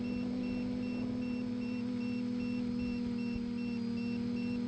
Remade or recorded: recorded